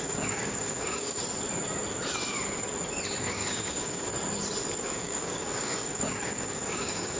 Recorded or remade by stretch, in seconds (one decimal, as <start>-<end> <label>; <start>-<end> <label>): 0.0-1.2 remade; 1.2-3.2 recorded; 3.2-4.1 remade; 4.1-4.8 recorded; 4.8-7.2 remade